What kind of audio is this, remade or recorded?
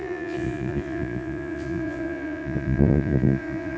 remade